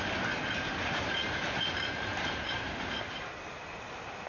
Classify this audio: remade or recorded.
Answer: recorded